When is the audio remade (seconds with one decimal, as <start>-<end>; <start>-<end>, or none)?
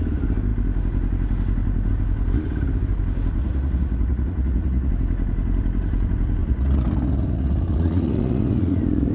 3.4-4.9; 6.4-9.1